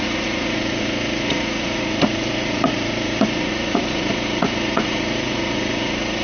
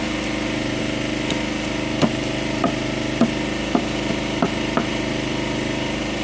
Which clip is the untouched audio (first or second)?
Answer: second